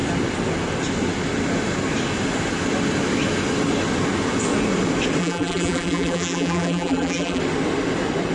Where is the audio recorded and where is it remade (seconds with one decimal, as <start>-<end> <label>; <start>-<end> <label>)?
0.0-5.2 recorded; 5.2-7.4 remade; 7.4-8.3 recorded